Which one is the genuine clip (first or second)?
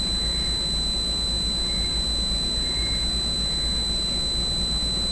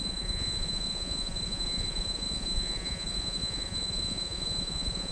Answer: first